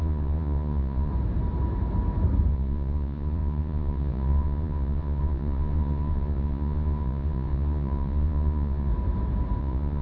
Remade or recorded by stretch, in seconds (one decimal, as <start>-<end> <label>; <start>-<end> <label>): 0.0-1.1 remade; 1.1-2.5 recorded; 2.5-8.9 remade; 8.9-9.6 recorded; 9.6-10.0 remade